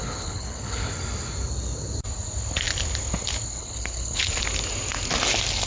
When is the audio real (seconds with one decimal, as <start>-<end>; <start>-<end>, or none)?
0.9-3.6; 4.4-5.7

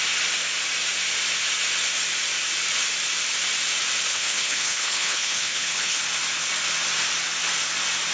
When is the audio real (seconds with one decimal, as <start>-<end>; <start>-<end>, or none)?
0.0-4.1; 6.0-8.1